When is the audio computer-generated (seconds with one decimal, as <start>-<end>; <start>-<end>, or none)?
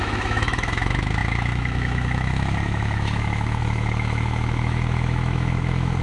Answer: 0.0-6.0